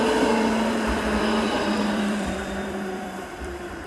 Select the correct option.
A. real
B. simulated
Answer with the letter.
B